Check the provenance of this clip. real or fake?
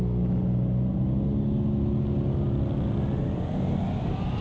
real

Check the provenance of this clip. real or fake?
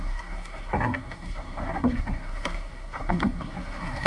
fake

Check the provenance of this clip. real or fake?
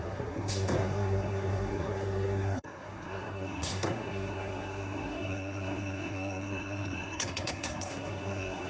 fake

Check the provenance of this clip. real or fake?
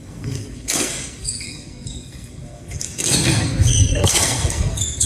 fake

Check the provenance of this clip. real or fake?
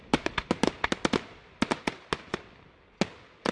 real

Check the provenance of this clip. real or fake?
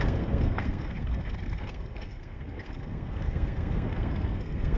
fake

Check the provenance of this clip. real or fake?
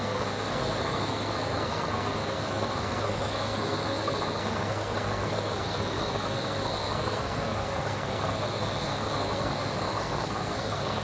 fake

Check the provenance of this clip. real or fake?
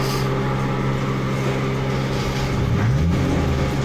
real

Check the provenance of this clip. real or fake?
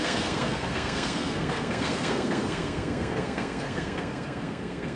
fake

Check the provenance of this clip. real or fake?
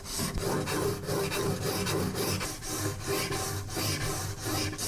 real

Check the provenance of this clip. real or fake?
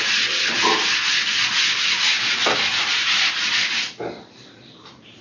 real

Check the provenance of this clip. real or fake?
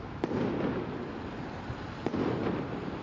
real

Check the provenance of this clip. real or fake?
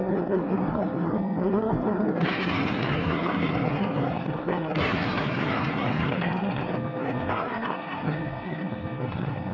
fake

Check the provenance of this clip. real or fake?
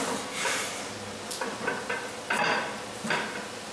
real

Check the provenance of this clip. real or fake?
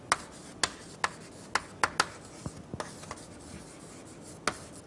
real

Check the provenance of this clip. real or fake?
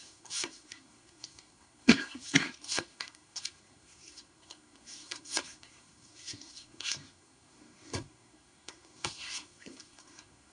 fake